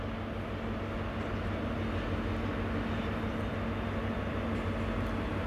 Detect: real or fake real